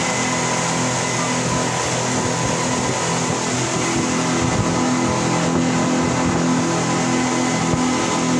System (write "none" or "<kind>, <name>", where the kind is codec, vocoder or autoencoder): none